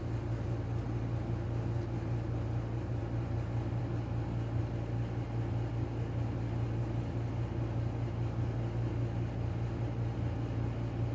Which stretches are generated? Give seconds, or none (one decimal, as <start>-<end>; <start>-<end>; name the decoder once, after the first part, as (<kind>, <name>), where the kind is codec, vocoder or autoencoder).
none